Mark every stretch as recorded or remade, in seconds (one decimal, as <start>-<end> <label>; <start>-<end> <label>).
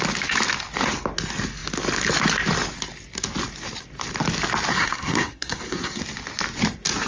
0.0-4.7 recorded; 4.7-6.0 remade; 6.0-7.1 recorded